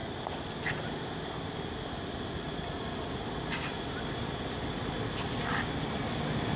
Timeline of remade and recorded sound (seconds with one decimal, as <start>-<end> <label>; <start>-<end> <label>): 0.0-6.6 recorded